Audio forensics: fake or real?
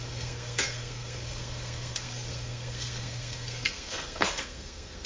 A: fake